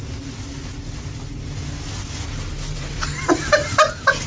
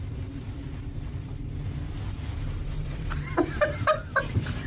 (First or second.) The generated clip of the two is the second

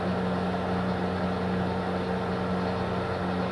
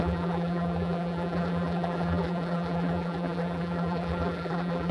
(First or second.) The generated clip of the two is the second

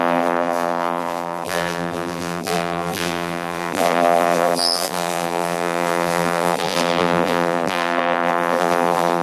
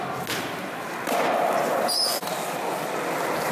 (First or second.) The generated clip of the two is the first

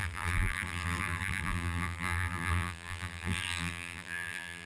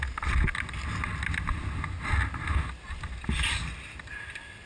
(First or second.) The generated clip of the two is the first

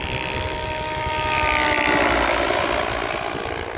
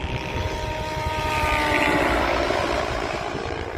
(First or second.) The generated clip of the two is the second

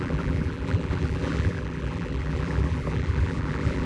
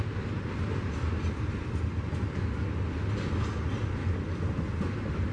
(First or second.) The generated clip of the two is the first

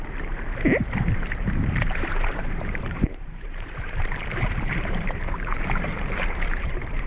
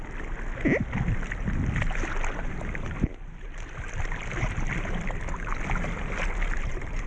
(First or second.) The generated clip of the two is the first